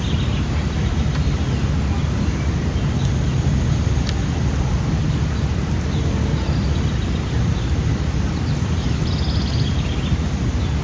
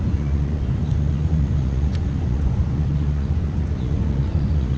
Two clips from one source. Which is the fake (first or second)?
second